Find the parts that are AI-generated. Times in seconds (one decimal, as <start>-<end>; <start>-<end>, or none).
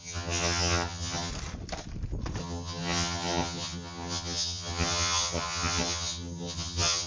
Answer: 0.0-1.3; 2.4-7.1